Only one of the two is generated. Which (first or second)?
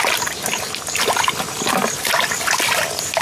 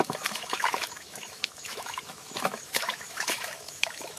second